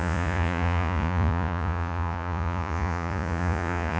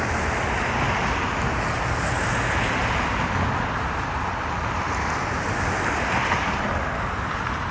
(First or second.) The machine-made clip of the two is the first